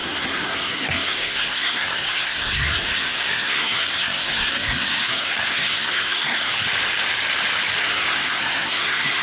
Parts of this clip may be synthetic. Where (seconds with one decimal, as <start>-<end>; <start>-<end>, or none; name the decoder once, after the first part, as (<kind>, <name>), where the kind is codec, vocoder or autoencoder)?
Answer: 0.0-6.5 (codec, SNAC); 7.8-9.2